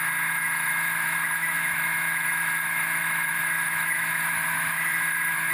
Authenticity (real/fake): fake